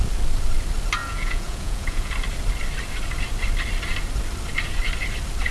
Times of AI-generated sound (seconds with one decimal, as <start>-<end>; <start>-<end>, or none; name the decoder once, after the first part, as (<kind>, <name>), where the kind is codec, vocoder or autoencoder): 1.0-2.1 (vocoder, Vocos)